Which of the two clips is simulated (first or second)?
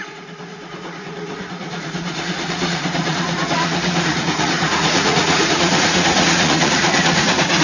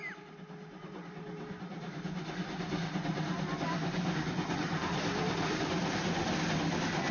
first